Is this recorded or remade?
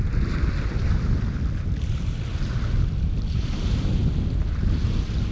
recorded